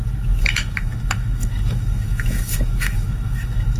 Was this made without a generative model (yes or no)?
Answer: no